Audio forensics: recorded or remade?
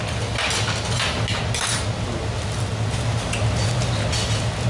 recorded